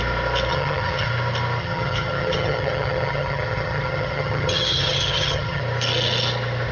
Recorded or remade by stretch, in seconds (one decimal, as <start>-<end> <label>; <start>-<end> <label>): 0.0-0.5 recorded; 0.5-1.1 remade; 1.1-1.6 recorded; 1.6-5.6 remade; 5.6-6.7 recorded